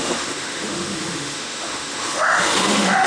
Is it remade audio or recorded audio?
remade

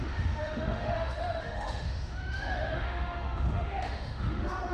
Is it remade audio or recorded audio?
remade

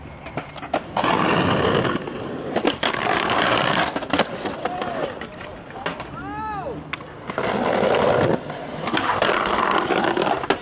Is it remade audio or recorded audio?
recorded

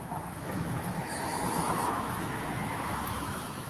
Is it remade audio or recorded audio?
remade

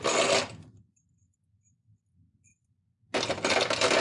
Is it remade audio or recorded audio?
recorded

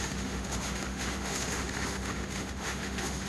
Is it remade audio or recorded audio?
remade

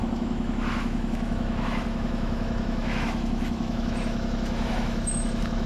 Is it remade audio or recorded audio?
remade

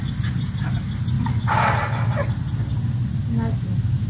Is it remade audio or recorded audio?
recorded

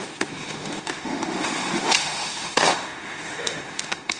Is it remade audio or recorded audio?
remade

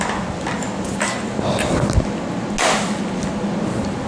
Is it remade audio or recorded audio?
recorded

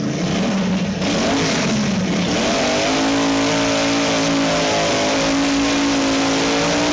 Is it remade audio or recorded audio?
recorded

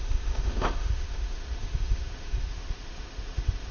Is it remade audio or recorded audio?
remade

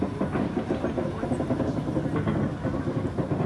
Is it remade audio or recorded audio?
recorded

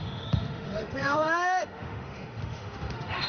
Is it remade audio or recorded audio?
remade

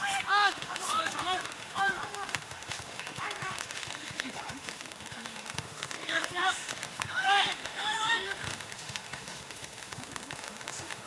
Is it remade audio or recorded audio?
remade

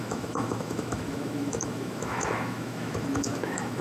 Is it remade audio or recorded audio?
remade